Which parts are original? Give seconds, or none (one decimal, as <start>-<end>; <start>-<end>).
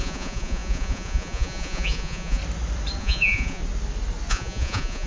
2.4-3.0; 3.6-4.3